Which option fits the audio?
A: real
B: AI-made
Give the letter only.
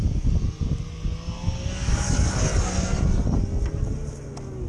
A